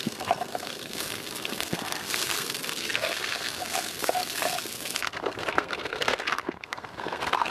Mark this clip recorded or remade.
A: remade